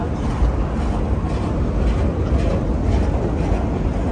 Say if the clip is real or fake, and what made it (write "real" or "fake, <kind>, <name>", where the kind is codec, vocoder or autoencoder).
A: real